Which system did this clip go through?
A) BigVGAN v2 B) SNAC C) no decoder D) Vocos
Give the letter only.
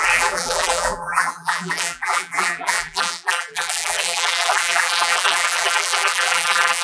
A